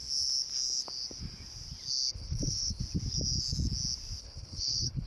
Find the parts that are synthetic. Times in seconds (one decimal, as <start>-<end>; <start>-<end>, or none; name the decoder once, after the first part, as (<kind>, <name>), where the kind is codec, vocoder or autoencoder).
2.1-2.8 (codec, HILCodec); 4.2-5.1

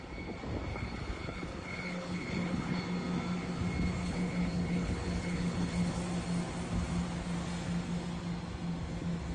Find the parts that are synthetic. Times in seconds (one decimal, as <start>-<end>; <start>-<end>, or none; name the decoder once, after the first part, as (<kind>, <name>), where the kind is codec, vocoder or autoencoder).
0.7-2.8 (codec, HILCodec); 4.0-6.0

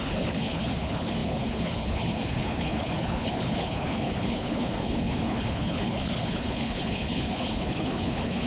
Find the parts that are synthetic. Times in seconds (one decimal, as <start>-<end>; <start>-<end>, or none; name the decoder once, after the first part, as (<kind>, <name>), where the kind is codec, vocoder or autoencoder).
0.0-8.5 (codec, HILCodec)

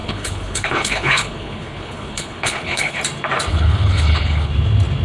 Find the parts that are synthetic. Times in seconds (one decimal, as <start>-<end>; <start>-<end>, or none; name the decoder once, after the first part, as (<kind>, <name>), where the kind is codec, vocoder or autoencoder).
0.0-3.0 (codec, HILCodec); 3.5-4.5